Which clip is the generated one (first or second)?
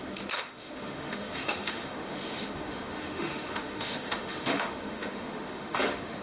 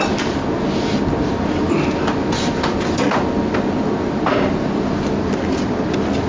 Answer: first